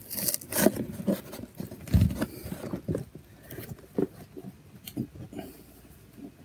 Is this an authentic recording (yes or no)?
yes